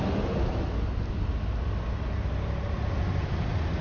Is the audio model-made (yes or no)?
no